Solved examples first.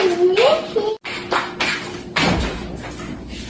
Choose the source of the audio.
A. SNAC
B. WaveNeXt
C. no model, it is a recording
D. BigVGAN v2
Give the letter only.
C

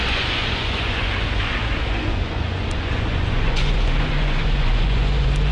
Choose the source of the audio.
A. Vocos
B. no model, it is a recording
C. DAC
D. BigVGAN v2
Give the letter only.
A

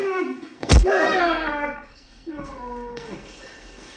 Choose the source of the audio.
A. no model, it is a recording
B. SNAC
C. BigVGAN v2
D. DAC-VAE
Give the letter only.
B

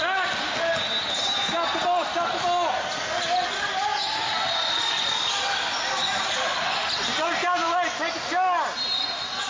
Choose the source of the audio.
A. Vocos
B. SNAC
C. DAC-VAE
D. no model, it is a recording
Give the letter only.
D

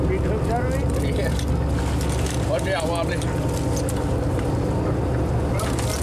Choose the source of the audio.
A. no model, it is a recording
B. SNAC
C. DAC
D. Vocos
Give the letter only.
A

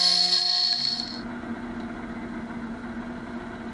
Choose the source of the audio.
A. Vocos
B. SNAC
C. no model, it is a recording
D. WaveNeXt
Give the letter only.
C